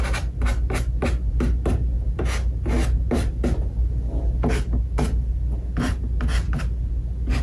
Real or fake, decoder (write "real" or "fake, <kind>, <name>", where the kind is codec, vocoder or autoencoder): real